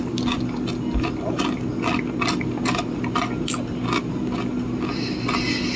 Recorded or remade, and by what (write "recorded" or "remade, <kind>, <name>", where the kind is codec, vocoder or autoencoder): recorded